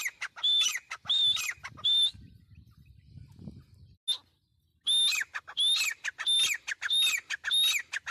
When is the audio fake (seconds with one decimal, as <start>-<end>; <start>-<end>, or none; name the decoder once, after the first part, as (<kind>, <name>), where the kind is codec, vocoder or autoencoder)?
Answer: none